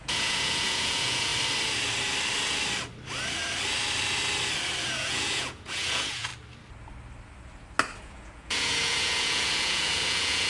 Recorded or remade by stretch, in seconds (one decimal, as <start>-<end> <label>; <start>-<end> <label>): 0.0-1.3 remade; 1.3-4.8 recorded; 4.8-6.3 remade; 6.3-8.0 recorded; 8.0-10.5 remade